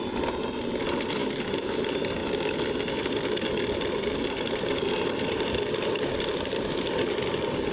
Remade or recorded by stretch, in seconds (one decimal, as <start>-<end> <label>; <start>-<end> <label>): 0.0-1.2 recorded; 1.2-1.8 remade; 1.8-7.7 recorded